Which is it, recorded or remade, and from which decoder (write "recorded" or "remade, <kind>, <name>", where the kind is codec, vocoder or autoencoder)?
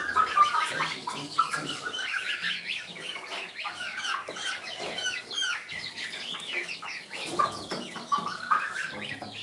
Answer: remade, codec, DAC